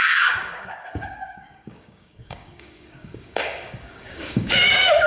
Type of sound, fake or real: fake